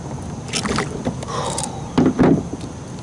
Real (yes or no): yes